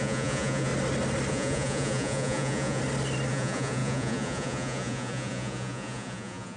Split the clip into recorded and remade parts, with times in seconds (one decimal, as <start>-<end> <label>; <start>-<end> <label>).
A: 0.0-0.7 remade; 0.7-1.3 recorded; 1.3-2.8 remade; 2.8-3.3 recorded; 3.3-6.6 remade